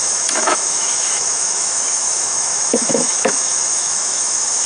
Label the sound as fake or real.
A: fake